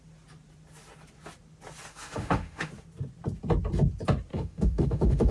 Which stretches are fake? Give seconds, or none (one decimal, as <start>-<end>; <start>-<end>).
1.9-2.7; 4.3-5.3